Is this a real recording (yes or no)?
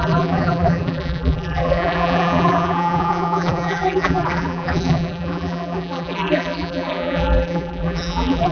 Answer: no